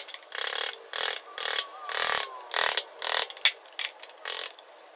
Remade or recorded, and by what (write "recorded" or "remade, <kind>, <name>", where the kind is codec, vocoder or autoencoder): recorded